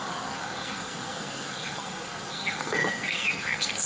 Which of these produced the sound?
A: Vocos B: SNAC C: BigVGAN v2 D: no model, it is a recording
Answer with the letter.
B